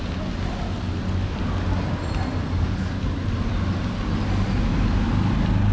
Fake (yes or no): no